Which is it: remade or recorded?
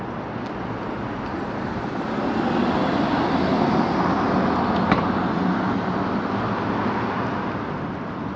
recorded